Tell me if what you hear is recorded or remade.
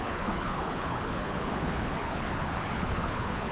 remade